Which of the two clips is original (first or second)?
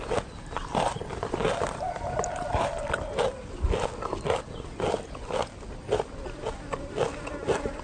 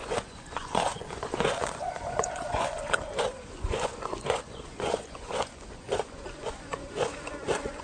first